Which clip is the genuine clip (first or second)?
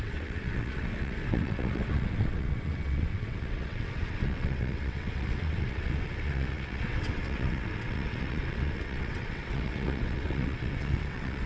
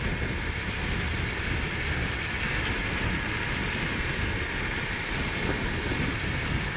second